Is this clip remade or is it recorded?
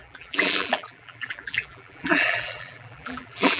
remade